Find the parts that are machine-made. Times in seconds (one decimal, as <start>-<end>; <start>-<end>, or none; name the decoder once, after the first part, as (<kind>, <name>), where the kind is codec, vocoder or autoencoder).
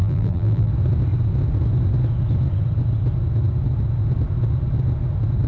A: 0.0-0.7 (vocoder, BigVGAN v2)